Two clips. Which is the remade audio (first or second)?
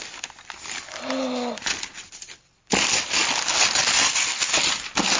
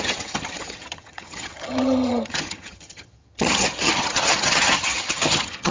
second